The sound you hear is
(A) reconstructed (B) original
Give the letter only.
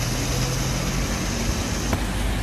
B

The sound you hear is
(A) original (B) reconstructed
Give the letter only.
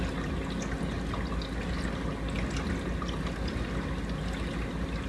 A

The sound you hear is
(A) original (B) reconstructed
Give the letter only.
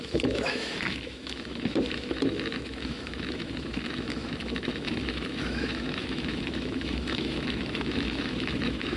B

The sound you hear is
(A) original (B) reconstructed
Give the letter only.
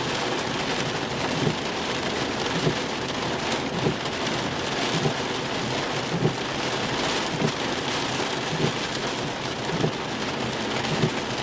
A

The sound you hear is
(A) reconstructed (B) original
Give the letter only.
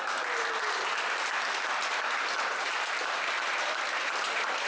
B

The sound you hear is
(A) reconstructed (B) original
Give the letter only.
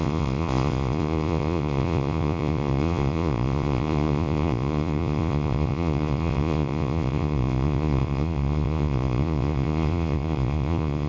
A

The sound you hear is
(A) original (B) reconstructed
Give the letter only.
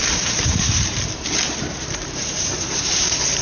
B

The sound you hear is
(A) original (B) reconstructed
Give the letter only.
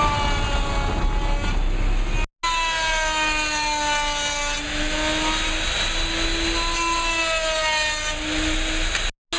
A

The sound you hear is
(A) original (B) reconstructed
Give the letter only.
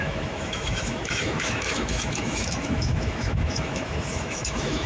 B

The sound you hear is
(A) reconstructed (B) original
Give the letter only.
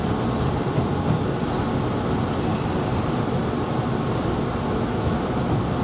B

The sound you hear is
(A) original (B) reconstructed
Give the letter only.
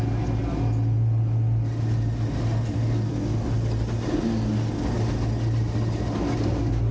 A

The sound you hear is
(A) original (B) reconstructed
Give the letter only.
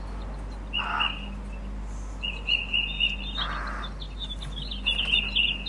A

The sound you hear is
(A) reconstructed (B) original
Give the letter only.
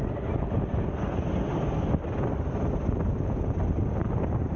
B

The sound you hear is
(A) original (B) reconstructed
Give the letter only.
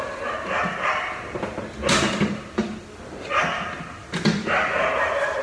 A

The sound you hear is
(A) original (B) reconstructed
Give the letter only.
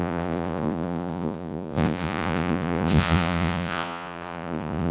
B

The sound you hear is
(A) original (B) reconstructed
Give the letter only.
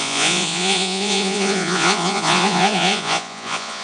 B